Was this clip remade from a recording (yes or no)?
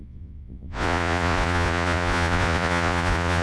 yes